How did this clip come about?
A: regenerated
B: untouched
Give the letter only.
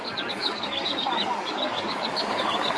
A